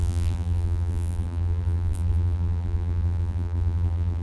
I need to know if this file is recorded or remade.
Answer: remade